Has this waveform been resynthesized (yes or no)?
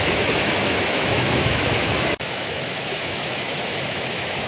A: yes